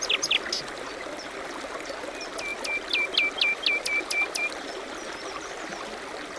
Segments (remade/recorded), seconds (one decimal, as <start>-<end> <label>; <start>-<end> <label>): 0.0-6.4 recorded